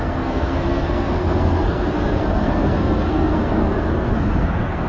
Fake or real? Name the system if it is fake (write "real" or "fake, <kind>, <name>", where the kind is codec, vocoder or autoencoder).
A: fake, codec, SNAC